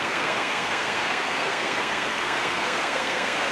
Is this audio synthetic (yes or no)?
yes